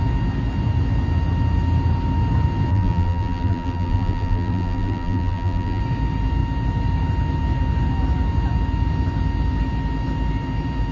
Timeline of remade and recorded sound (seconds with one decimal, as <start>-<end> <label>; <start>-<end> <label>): 0.0-2.7 recorded; 2.7-5.8 remade; 5.8-10.9 recorded